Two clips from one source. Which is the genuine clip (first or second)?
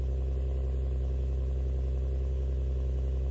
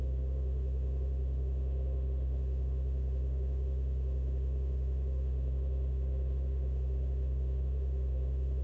first